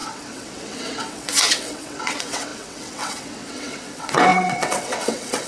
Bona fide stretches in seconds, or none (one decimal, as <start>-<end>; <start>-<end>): none